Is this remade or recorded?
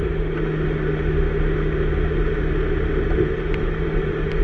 recorded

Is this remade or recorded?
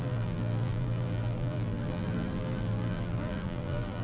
remade